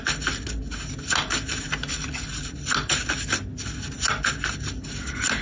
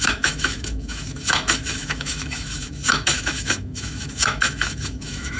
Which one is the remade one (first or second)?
second